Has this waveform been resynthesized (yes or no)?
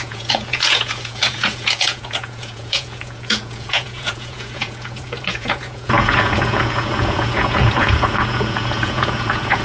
yes